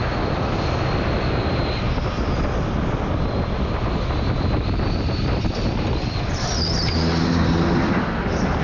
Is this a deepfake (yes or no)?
no